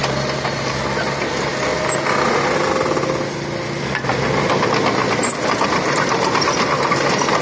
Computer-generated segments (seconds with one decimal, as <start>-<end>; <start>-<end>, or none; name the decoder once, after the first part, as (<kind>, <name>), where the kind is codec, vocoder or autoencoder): none